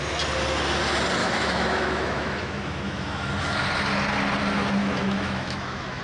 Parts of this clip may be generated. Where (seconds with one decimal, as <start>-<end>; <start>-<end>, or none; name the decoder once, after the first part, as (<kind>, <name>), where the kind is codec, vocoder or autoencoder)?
1.2-3.3 (autoencoder, DAC-VAE); 4.8-6.0